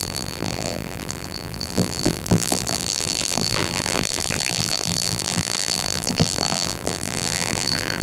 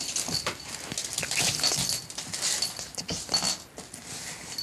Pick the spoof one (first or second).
first